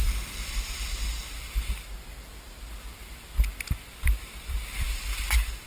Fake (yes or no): no